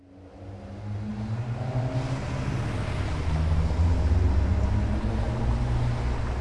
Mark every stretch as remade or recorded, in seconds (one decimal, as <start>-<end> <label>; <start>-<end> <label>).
0.0-6.4 recorded